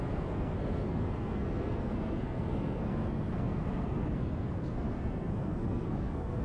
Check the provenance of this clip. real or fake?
fake